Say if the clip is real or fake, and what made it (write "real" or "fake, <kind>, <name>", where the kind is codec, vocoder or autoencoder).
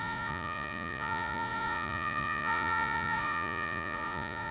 fake, vocoder, Vocos